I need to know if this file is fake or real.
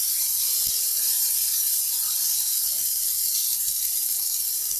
real